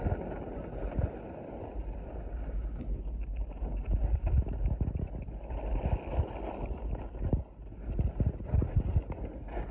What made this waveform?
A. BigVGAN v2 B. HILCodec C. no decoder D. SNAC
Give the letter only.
C